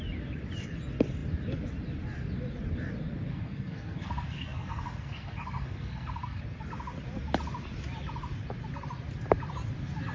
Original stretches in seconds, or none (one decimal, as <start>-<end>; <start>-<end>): 0.0-3.3; 6.4-10.1